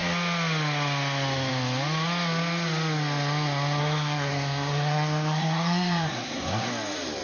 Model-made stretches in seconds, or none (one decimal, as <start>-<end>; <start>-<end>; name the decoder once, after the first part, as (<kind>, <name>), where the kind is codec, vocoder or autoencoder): 3.8-6.7 (codec, SNAC)